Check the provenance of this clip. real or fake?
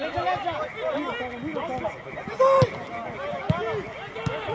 real